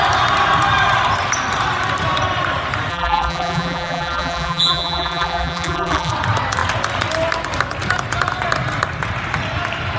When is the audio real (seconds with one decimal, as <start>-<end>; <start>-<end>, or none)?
0.0-2.9; 6.1-10.0